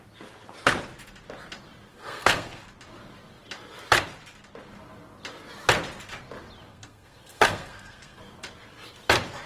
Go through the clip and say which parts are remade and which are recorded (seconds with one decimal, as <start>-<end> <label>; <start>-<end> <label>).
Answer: 0.0-1.9 recorded; 1.9-2.6 remade; 2.6-6.7 recorded; 6.7-8.2 remade; 8.2-9.5 recorded